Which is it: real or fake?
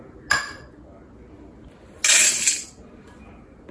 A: real